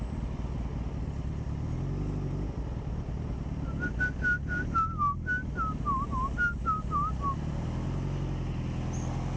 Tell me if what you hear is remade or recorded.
recorded